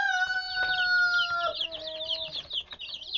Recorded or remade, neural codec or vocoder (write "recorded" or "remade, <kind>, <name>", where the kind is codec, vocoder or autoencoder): recorded